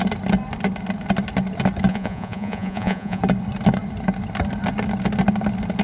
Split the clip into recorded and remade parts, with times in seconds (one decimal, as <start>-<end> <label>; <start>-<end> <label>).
0.0-1.9 recorded; 1.9-3.2 remade; 3.2-5.8 recorded

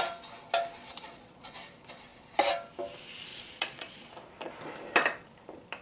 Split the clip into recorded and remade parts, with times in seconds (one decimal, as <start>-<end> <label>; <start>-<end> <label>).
0.0-0.8 recorded; 0.8-1.5 remade; 1.5-3.3 recorded; 3.3-4.1 remade; 4.1-5.8 recorded

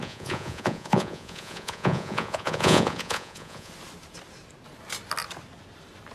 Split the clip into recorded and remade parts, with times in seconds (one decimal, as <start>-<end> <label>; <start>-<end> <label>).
0.0-3.7 remade; 3.7-6.1 recorded

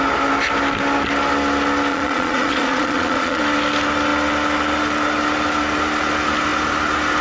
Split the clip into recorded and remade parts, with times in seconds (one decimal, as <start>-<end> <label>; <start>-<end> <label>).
0.0-1.9 recorded; 1.9-3.4 remade; 3.4-7.2 recorded

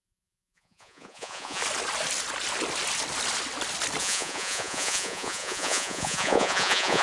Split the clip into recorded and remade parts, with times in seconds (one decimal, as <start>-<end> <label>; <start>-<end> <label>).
0.0-1.6 remade; 1.6-4.0 recorded; 4.0-7.0 remade